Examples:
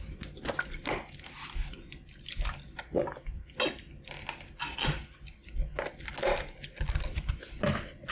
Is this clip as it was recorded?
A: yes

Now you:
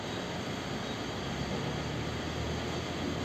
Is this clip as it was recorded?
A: no